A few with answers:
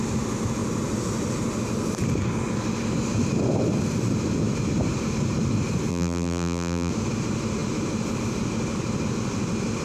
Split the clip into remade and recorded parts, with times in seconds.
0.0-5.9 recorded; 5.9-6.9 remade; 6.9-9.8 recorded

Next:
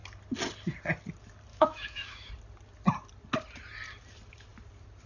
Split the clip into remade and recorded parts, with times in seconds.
0.0-1.5 recorded; 1.5-2.3 remade; 2.3-5.1 recorded

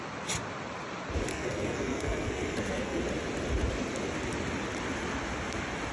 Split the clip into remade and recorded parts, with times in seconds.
0.0-1.3 recorded; 1.3-3.0 remade; 3.0-5.9 recorded

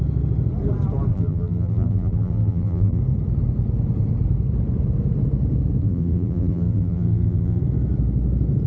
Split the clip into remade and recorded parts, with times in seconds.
0.0-1.1 recorded; 1.1-3.0 remade; 3.0-5.8 recorded; 5.8-7.6 remade; 7.6-8.7 recorded

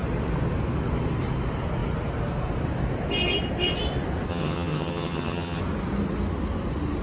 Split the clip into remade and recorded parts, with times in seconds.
0.0-4.3 recorded; 4.3-5.6 remade; 5.6-7.0 recorded

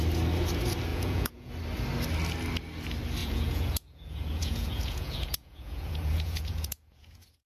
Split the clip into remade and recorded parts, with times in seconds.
0.0-0.9 recorded; 0.9-1.5 remade; 1.5-3.2 recorded; 3.2-7.5 remade

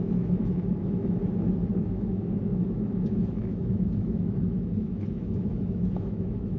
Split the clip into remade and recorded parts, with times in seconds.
0.0-1.2 remade; 1.2-1.7 recorded; 1.7-6.6 remade